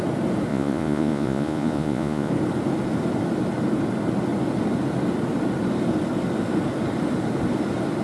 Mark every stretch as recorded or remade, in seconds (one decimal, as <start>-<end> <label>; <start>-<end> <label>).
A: 0.0-0.5 recorded; 0.5-2.3 remade; 2.3-8.0 recorded